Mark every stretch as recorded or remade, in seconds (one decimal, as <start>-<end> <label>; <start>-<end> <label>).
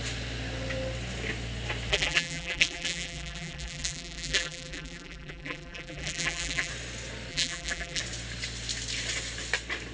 0.0-1.9 recorded; 1.9-6.7 remade; 6.7-7.3 recorded; 7.3-8.0 remade; 8.0-9.9 recorded